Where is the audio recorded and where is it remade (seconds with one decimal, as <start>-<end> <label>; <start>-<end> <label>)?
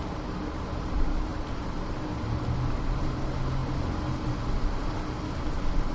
0.0-1.3 recorded; 1.3-2.2 remade; 2.2-5.9 recorded